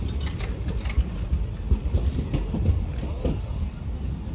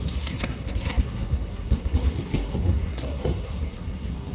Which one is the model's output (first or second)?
second